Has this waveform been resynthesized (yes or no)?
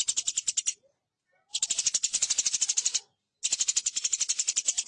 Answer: no